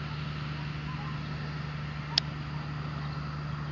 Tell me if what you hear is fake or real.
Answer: real